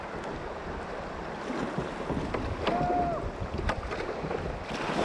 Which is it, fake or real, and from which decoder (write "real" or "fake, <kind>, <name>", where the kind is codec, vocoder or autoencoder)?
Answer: real